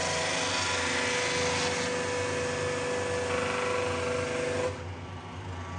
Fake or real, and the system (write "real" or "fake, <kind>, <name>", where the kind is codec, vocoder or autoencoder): real